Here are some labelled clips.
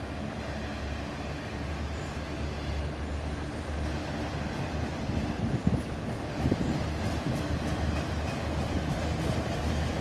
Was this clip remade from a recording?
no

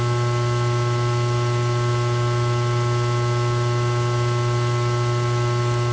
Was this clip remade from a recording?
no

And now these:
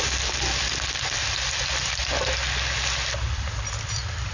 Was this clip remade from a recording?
no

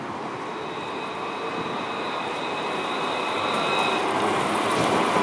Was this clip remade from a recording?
no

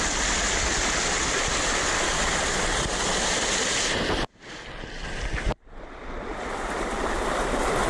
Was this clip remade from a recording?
no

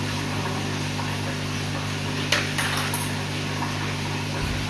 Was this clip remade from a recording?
no